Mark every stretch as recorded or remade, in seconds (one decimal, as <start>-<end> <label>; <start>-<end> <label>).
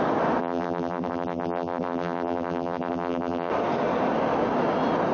0.0-0.4 recorded; 0.4-3.5 remade; 3.5-5.1 recorded